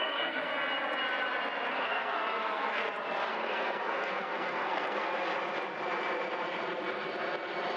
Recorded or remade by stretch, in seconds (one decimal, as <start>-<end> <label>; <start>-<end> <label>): 0.0-0.5 remade; 0.5-1.7 recorded; 1.7-2.8 remade; 2.8-3.3 recorded; 3.3-5.1 remade; 5.1-7.8 recorded